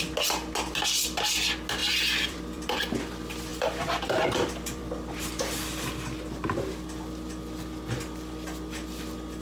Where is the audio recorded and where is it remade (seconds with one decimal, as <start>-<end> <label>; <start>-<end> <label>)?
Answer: 0.0-1.8 recorded; 1.8-2.8 remade; 2.8-3.5 recorded; 3.5-5.4 remade; 5.4-9.4 recorded